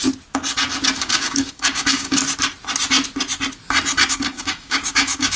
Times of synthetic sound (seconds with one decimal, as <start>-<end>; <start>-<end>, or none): 1.0-2.2; 4.1-5.4